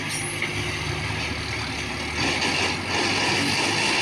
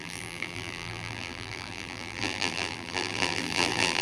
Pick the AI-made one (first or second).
second